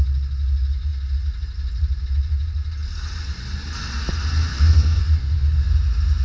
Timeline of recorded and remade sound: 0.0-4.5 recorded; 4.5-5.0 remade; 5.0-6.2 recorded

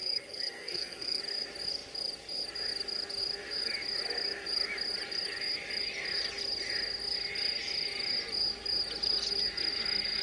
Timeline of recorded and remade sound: 0.0-1.2 remade; 1.2-10.2 recorded

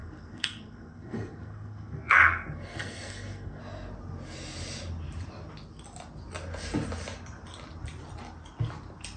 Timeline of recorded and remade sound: 0.0-3.6 remade; 3.6-9.2 recorded